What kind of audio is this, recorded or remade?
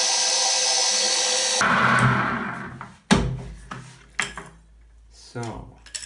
recorded